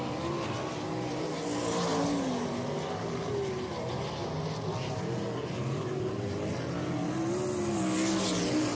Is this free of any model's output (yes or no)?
yes